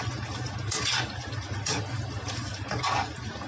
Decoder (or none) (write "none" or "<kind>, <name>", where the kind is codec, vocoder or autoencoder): none